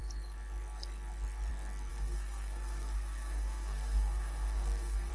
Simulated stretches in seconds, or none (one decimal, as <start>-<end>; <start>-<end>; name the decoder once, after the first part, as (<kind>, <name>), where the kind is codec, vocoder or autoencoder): 1.9-5.1 (codec, SNAC)